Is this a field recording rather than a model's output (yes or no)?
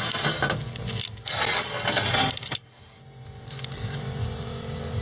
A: yes